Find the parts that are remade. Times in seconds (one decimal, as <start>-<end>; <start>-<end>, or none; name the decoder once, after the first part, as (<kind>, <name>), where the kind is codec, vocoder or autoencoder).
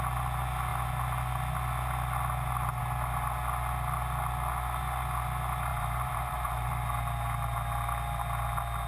5.7-6.7 (vocoder, BigVGAN v2)